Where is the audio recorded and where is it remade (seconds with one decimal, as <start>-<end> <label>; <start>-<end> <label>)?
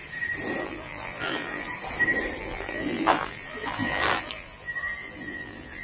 0.0-0.6 recorded; 0.6-1.7 remade; 1.7-2.4 recorded; 2.4-5.8 remade